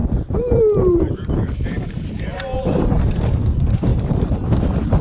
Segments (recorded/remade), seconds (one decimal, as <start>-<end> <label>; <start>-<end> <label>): 0.0-3.0 remade; 3.0-5.0 recorded